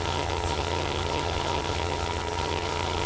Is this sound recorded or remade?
remade